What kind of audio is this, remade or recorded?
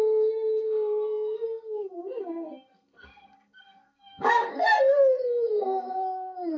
remade